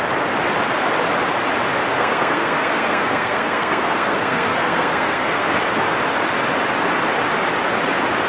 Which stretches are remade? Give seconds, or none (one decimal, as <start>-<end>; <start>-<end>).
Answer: 1.9-5.6